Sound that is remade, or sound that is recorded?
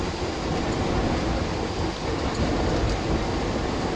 remade